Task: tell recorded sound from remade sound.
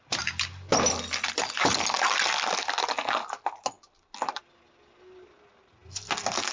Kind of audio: recorded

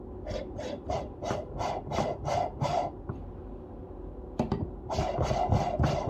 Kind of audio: recorded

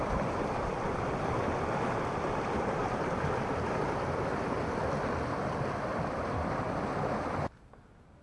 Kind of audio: remade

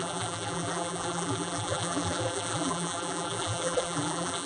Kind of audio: remade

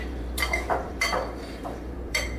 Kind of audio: remade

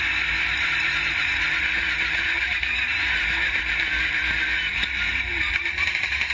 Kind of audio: remade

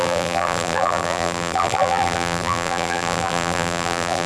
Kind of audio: remade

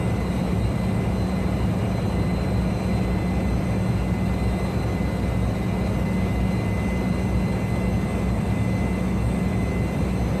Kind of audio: recorded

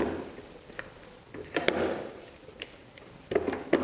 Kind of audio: remade